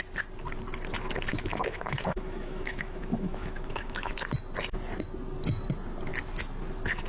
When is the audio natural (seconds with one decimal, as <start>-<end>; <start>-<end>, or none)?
0.0-1.3; 4.1-7.1